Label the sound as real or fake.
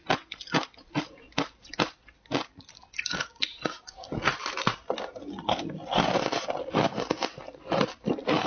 real